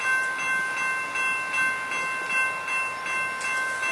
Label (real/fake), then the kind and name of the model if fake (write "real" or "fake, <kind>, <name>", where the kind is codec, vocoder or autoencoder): real